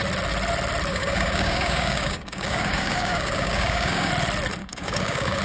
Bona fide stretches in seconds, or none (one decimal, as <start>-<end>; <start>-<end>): 0.0-0.9; 4.1-4.6